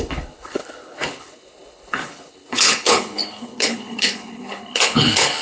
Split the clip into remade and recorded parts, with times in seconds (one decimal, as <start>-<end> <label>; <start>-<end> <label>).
0.0-5.4 remade